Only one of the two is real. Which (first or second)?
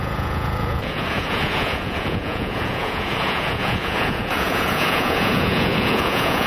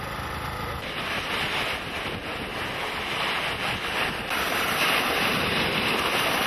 second